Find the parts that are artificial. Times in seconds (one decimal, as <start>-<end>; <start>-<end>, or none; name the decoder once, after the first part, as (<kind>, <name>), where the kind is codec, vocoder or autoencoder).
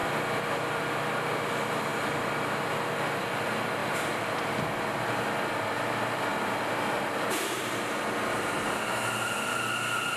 0.0-1.1 (vocoder, BigVGAN v2); 3.8-4.6; 6.3-7.6